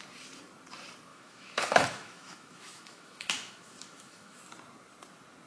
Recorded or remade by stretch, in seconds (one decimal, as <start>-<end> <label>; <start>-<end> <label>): 0.0-1.1 recorded; 1.1-4.4 remade; 4.4-5.5 recorded